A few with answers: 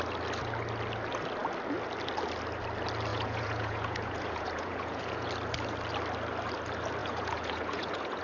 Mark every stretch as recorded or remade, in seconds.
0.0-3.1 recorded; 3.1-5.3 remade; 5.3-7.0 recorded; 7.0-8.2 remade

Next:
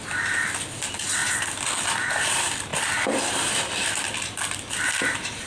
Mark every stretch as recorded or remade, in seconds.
0.0-5.5 recorded

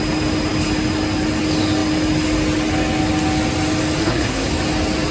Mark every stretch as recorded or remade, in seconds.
0.0-4.0 recorded; 4.0-4.5 remade; 4.5-5.1 recorded

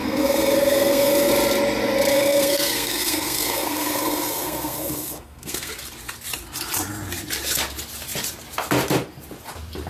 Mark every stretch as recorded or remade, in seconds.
0.0-1.3 remade; 1.3-2.1 recorded; 2.1-5.7 remade; 5.7-9.9 recorded